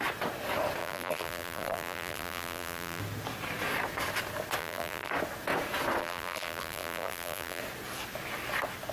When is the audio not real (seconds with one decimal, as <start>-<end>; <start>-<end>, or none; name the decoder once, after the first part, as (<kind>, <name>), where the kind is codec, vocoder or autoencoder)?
0.8-3.0 (vocoder, BigVGAN v2); 4.6-5.1; 6.0-7.6